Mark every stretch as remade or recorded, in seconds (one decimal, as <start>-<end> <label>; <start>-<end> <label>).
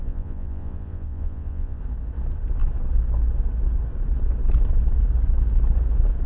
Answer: 0.0-1.8 remade; 1.8-6.3 recorded